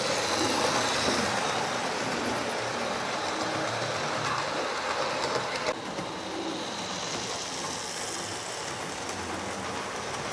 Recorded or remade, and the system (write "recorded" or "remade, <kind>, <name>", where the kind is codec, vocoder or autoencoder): recorded